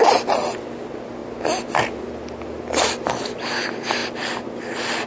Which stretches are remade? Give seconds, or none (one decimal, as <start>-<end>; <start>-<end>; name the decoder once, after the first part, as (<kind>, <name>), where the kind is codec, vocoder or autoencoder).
none